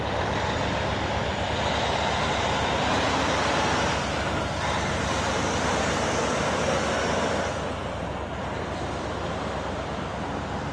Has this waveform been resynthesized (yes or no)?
no